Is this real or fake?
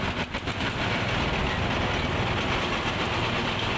real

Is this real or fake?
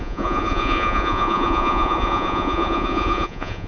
fake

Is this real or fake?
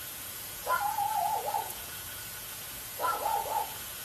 fake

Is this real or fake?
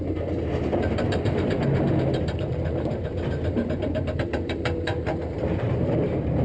fake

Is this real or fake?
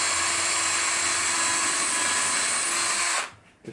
real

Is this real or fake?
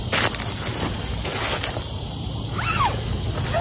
real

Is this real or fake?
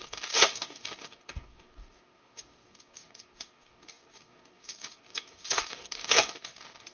fake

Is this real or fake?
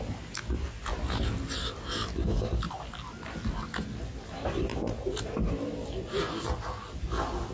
real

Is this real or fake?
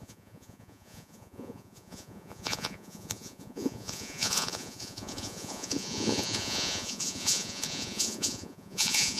fake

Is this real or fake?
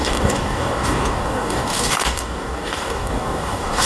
fake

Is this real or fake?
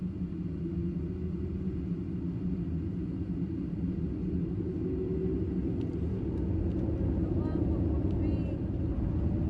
real